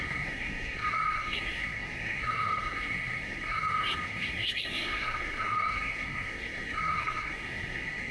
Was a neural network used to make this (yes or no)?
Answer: yes